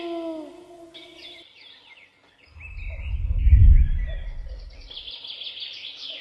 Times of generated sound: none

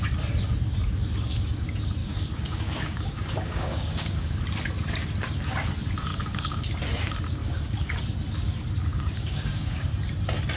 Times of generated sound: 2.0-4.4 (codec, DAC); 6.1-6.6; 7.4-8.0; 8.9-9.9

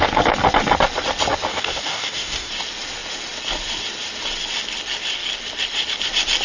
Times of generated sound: 1.5-2.5 (codec, DAC)